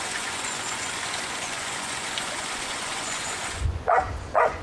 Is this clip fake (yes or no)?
yes